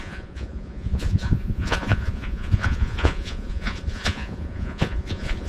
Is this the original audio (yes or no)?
no